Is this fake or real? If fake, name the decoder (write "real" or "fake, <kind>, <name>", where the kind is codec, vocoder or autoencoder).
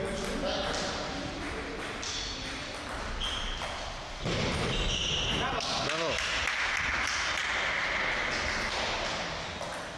real